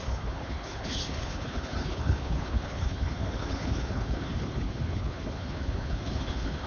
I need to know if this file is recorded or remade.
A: remade